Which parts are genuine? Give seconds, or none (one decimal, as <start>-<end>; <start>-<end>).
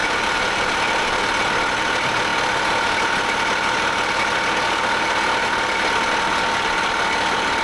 0.0-7.6